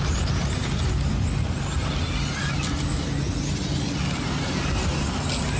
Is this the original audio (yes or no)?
yes